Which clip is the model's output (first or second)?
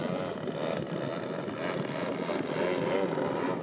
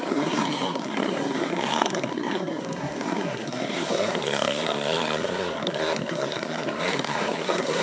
second